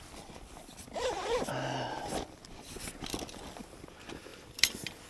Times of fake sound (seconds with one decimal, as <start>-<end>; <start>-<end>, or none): 4.3-5.1